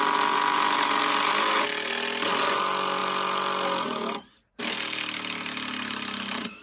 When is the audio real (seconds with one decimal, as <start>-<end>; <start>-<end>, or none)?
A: 0.0-6.6